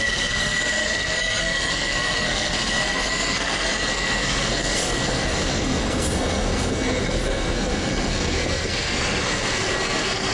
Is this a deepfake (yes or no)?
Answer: yes